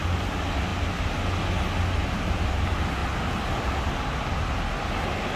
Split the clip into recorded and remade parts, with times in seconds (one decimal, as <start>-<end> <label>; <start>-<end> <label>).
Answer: 0.0-5.4 recorded